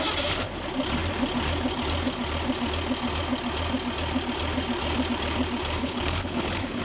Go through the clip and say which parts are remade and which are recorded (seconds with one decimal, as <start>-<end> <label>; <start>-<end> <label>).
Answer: 0.0-5.8 recorded; 5.8-6.8 remade